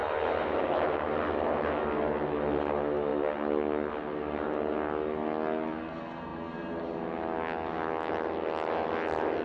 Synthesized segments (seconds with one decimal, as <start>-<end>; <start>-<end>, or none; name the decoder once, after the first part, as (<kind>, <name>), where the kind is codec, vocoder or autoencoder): none